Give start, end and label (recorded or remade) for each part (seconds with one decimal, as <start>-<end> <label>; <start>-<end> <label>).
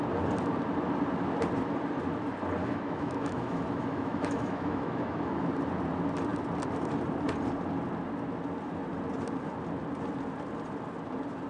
0.0-2.6 recorded; 2.6-5.5 remade; 5.5-11.5 recorded